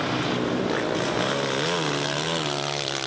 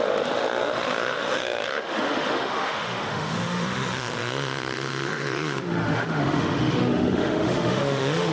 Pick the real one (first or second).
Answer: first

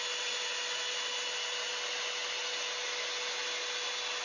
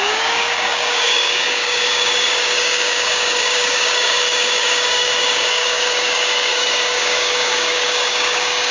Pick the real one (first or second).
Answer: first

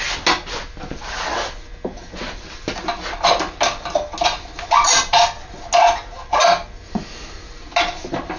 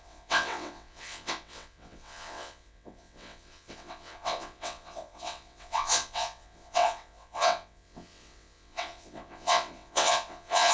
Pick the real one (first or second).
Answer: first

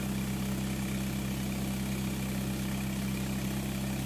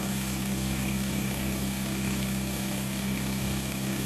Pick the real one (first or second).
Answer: first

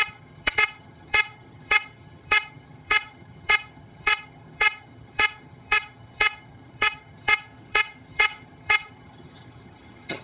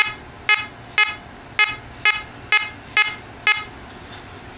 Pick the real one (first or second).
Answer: second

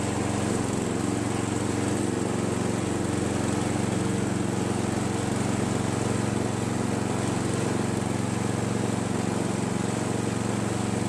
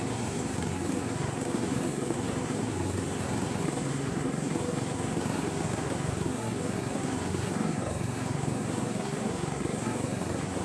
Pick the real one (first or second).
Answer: first